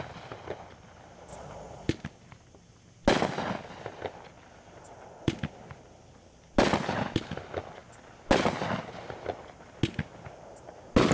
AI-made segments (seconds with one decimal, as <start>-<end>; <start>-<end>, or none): 1.3-1.9

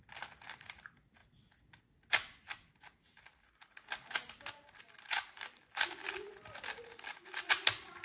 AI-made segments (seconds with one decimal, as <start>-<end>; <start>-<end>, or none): none

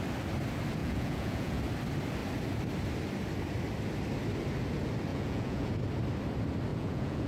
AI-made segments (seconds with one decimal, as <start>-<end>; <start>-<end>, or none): 0.8-1.6; 5.1-5.7; 6.7-7.3

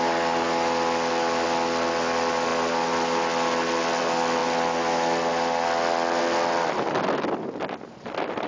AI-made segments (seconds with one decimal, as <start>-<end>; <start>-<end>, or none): none

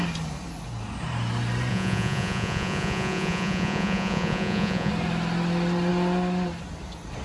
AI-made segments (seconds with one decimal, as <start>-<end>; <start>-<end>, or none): 1.7-4.9

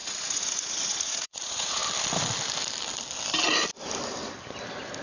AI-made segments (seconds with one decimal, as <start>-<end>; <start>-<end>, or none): 0.0-1.8

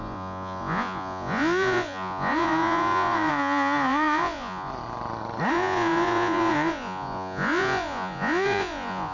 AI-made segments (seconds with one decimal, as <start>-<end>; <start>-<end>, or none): 0.0-4.7; 5.5-9.1